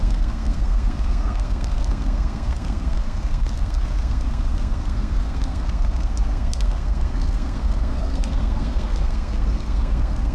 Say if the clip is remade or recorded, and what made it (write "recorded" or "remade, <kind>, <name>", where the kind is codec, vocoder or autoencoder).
remade, codec, SNAC